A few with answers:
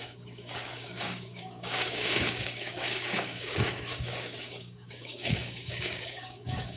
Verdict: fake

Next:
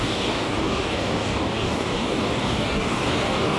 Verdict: fake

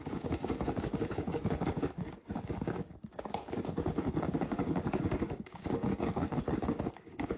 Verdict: fake